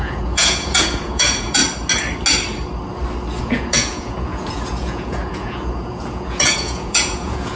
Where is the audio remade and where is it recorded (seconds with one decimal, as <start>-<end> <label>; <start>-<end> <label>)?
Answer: 0.0-1.6 remade; 1.6-3.4 recorded; 3.4-7.6 remade